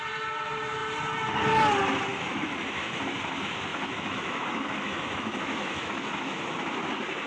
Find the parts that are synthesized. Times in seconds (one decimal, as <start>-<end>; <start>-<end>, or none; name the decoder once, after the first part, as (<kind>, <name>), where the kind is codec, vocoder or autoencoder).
2.1-3.0 (autoencoder, DAC-VAE); 3.7-6.4